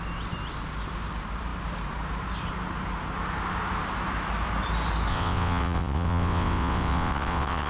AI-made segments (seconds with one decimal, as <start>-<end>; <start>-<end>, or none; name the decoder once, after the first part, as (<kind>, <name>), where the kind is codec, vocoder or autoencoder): 5.1-7.7 (vocoder, WaveNeXt)